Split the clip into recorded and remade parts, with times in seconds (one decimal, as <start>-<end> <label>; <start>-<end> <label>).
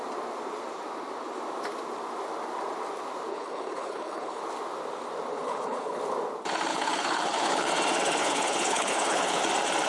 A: 0.0-3.3 recorded; 3.3-4.4 remade; 4.4-5.3 recorded; 5.3-6.0 remade; 6.0-6.7 recorded; 6.7-7.7 remade; 7.7-8.2 recorded; 8.2-9.4 remade; 9.4-9.9 recorded